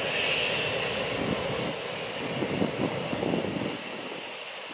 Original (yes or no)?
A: yes